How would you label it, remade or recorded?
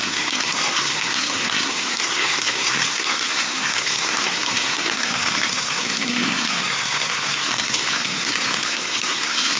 remade